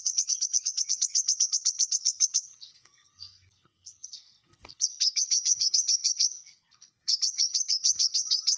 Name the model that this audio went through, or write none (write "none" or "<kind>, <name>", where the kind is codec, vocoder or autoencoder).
codec, SNAC